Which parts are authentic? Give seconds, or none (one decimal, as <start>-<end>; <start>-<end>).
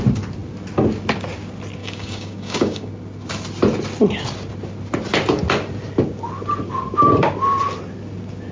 0.0-1.8; 2.9-8.5